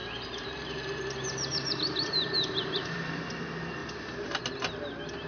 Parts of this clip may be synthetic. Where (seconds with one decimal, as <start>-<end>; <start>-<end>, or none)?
0.0-3.2; 3.8-4.4